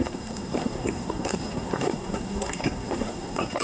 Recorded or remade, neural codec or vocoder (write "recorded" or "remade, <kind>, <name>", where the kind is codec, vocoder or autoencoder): remade, codec, SNAC